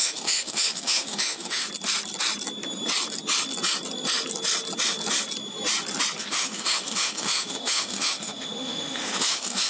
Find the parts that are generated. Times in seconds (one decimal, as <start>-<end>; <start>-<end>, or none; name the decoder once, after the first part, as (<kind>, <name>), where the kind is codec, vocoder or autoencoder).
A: 0.0-1.6 (autoencoder, DAC-VAE); 6.2-9.7